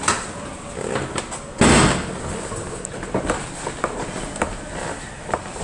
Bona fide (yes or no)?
yes